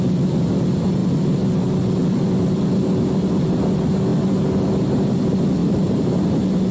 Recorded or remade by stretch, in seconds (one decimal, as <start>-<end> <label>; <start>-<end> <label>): 0.0-5.6 recorded; 5.6-6.3 remade; 6.3-6.7 recorded